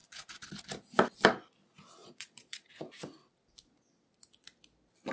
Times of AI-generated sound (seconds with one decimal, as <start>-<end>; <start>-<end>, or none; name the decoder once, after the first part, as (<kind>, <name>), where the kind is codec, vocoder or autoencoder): 0.0-0.5 (vocoder, Vocos); 2.0-2.7